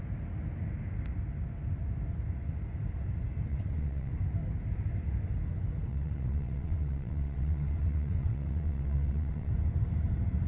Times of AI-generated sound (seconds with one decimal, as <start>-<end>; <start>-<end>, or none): 3.5-4.1; 5.9-9.5